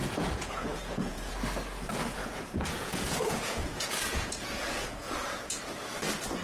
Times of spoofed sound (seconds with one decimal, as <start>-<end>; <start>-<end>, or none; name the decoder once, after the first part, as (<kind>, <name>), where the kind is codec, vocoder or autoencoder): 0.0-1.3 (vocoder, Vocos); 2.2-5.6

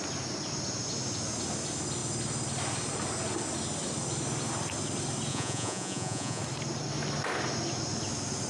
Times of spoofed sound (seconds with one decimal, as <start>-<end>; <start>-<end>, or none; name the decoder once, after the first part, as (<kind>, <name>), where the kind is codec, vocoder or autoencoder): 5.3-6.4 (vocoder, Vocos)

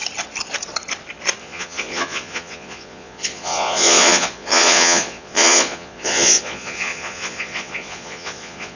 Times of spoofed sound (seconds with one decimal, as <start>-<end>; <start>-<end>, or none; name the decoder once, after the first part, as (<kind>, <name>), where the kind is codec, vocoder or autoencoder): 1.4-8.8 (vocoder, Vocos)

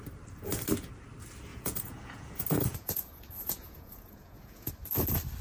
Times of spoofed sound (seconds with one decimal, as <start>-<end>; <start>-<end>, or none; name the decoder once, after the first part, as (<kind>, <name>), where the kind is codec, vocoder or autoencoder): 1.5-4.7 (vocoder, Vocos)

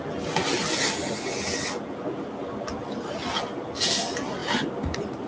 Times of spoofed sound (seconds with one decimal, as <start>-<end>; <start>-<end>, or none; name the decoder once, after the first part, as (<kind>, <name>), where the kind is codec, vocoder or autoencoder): none

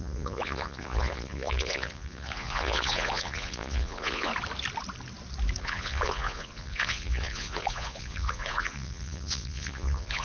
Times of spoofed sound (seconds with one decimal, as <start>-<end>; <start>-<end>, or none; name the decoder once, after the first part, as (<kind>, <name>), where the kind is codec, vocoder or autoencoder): 0.0-4.3 (vocoder, Vocos); 5.6-10.2